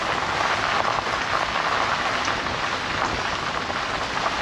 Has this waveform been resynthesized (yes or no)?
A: no